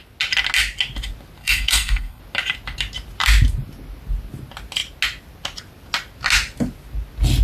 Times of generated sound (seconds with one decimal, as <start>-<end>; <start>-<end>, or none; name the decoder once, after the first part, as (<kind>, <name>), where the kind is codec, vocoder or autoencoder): 1.4-2.2 (codec, SNAC)